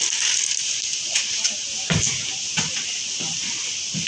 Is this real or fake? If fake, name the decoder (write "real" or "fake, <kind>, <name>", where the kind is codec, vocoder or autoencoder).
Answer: real